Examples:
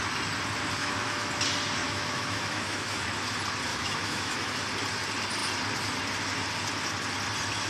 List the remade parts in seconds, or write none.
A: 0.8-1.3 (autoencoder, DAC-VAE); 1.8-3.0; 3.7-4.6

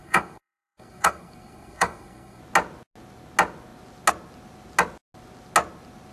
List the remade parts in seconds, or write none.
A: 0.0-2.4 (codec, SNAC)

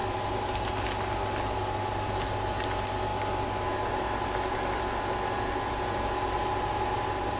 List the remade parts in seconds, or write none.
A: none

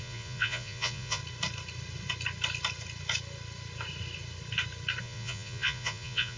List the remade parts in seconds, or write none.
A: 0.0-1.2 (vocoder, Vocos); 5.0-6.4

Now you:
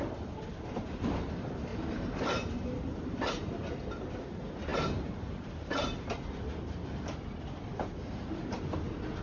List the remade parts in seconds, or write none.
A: 1.7-3.3 (vocoder, BigVGAN v2); 7.7-8.4

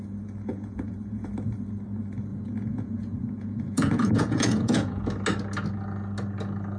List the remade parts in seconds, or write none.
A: 0.5-1.3 (vocoder, Vocos); 2.3-5.0

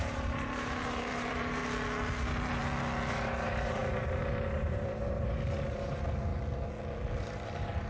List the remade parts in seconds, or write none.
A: 0.0-1.6 (vocoder, BigVGAN v2); 2.2-2.6; 3.1-6.3; 7.2-7.9